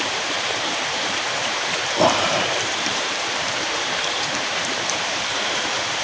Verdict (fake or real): fake